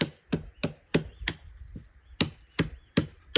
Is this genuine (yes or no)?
yes